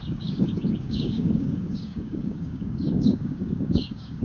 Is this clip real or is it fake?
fake